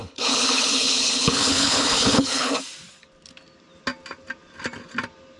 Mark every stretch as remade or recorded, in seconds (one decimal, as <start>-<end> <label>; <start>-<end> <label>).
0.0-2.5 remade; 2.5-5.4 recorded